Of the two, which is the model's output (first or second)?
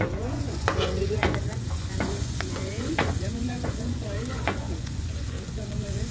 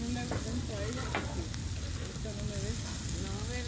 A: first